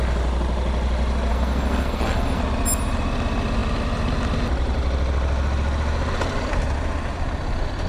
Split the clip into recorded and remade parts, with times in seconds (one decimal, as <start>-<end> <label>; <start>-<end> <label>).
0.0-1.3 recorded; 1.3-2.4 remade; 2.4-7.9 recorded